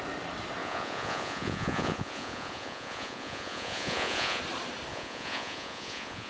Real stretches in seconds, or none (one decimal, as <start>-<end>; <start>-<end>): 0.0-0.6; 4.4-4.9